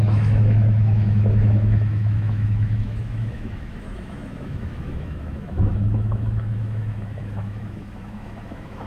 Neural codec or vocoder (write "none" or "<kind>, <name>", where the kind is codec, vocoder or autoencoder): autoencoder, DAC-VAE